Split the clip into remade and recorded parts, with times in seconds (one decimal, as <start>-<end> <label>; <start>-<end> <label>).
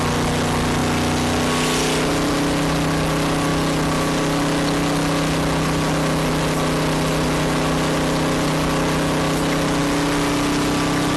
0.0-11.2 recorded